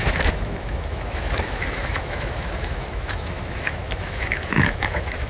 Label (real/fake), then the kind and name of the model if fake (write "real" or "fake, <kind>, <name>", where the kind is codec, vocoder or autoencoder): fake, autoencoder, DAC-VAE